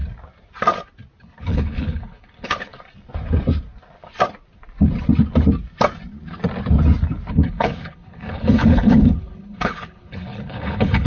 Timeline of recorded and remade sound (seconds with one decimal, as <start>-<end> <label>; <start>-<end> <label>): 0.0-1.2 recorded; 1.2-2.7 remade; 2.7-7.3 recorded; 7.3-11.1 remade